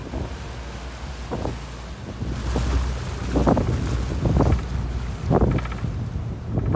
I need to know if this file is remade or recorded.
recorded